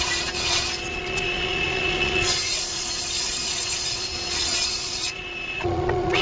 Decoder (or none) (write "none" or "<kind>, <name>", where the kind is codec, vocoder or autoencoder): vocoder, Vocos